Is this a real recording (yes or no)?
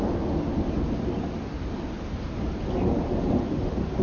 yes